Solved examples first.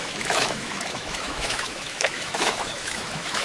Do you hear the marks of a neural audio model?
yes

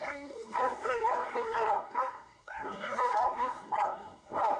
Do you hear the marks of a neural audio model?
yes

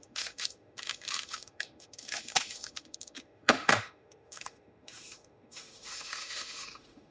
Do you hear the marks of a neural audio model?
yes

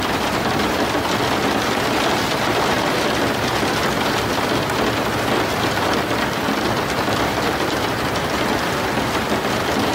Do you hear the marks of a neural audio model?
yes